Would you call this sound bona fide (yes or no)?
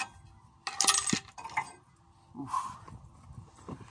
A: yes